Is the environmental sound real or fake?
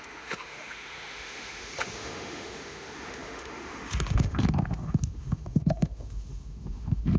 fake